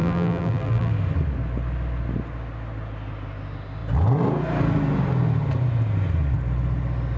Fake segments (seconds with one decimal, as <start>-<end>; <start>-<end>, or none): 0.0-0.9